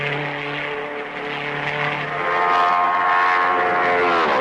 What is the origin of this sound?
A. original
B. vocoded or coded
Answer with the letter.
A